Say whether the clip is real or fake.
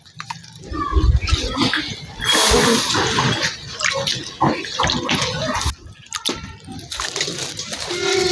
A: real